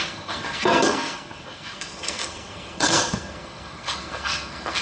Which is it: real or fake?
fake